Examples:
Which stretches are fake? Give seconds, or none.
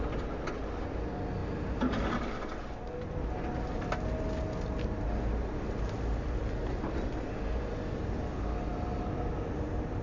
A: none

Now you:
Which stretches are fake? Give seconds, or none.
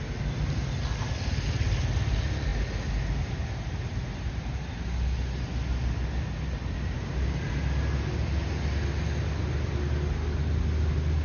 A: none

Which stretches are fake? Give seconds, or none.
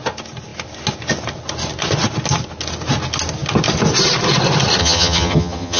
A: 4.8-5.8 (vocoder, HiFi-GAN)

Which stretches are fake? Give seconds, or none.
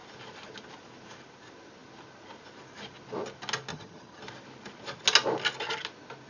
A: 3.7-4.2 (vocoder, HiFi-GAN)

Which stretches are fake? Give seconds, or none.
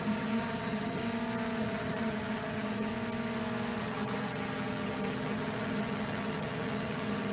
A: 0.0-1.0 (vocoder, HiFi-GAN); 1.6-2.9; 3.8-7.3